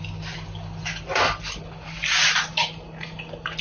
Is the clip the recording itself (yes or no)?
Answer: yes